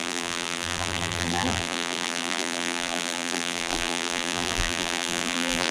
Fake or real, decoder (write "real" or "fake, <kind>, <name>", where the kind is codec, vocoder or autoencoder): fake, vocoder, BigVGAN v2